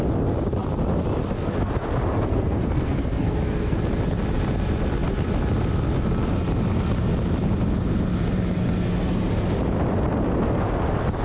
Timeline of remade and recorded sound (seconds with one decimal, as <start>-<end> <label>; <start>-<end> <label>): 0.0-2.3 recorded; 2.3-3.8 remade; 3.8-11.2 recorded